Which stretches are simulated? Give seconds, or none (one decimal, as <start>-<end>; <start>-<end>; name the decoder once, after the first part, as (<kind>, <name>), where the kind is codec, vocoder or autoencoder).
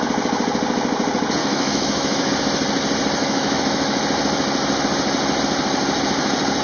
1.4-2.3 (autoencoder, DAC-VAE); 3.2-4.0